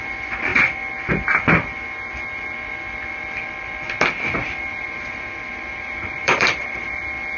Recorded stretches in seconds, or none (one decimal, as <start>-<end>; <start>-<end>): 0.0-4.4; 7.0-7.4